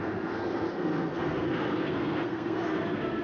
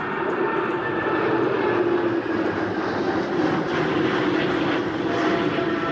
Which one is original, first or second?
second